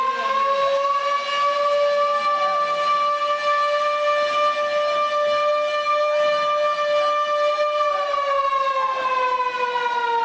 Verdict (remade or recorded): recorded